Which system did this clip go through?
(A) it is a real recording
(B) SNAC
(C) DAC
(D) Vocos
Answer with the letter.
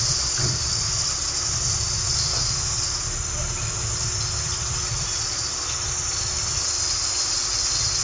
A